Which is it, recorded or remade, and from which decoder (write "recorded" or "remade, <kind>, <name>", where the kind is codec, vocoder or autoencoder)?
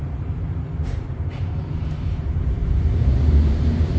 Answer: remade, vocoder, BigVGAN v2